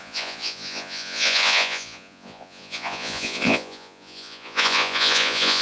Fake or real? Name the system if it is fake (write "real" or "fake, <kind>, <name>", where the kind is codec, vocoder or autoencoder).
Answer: fake, vocoder, Vocos